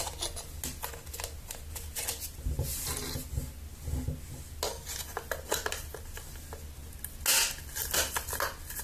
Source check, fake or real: real